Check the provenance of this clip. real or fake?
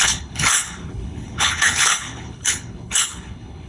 fake